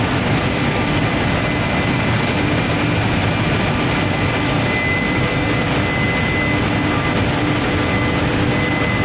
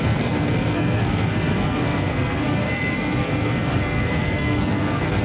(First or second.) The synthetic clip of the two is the second